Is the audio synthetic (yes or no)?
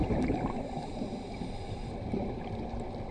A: yes